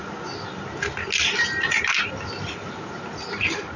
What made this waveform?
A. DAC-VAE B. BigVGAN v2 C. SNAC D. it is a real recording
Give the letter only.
D